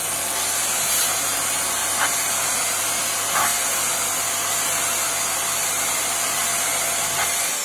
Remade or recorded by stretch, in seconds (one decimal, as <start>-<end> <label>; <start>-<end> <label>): 0.0-1.8 remade; 1.8-3.0 recorded; 3.0-7.6 remade

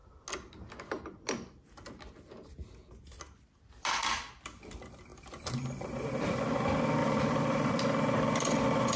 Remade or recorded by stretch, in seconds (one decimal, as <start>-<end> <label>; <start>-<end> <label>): 0.0-5.1 recorded; 5.1-6.4 remade; 6.4-7.0 recorded; 7.0-7.8 remade; 7.8-9.0 recorded

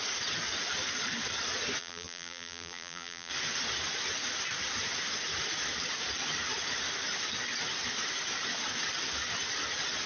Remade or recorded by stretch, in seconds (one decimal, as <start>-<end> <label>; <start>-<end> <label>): 0.0-1.8 recorded; 1.8-3.3 remade; 3.3-10.1 recorded

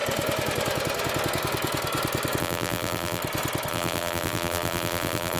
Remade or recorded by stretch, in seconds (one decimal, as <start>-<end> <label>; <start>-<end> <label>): 0.0-2.4 recorded; 2.4-3.2 remade; 3.2-3.7 recorded; 3.7-5.4 remade

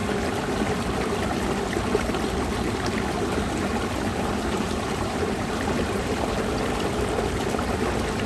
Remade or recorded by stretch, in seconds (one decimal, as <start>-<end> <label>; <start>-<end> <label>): 0.0-4.1 recorded; 4.1-6.1 remade; 6.1-8.3 recorded

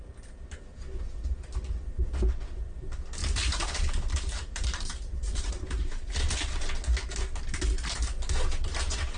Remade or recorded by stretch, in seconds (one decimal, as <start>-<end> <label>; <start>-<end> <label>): 0.0-3.2 recorded; 3.2-6.6 remade; 6.6-9.2 recorded